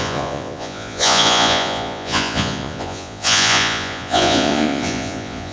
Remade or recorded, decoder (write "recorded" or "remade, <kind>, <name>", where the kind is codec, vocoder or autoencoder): remade, vocoder, Vocos